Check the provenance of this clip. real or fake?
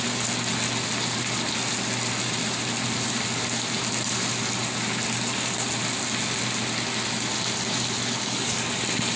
real